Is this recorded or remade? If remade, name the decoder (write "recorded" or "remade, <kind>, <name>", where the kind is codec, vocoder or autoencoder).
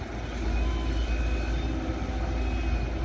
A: recorded